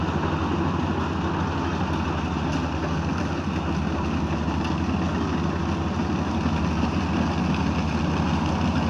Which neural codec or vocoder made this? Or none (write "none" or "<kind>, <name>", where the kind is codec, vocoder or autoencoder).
none